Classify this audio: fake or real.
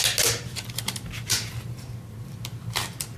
real